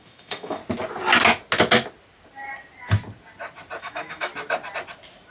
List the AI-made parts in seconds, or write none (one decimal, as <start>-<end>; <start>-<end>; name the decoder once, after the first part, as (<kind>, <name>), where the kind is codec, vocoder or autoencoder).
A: 0.0-0.6 (autoencoder, DAC-VAE); 3.8-4.3